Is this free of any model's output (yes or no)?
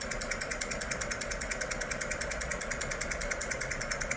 yes